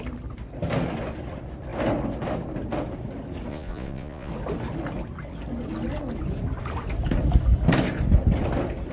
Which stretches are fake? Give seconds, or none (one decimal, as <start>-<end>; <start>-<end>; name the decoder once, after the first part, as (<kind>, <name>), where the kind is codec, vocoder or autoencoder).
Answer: 3.5-4.3 (vocoder, Vocos)